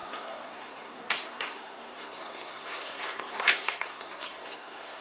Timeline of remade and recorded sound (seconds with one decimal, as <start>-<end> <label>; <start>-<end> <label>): 0.0-5.0 remade